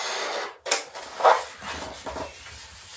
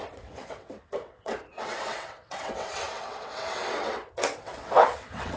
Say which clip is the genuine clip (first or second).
first